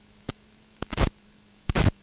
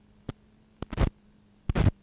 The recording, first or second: second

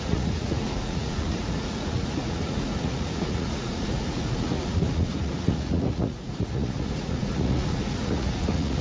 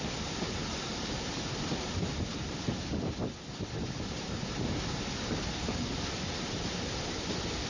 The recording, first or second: second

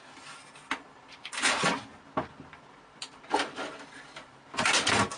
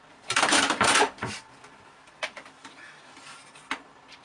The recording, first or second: first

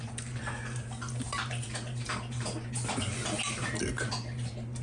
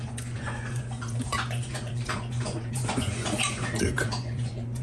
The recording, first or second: first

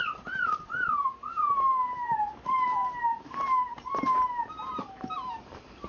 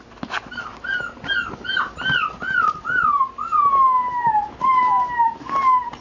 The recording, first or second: second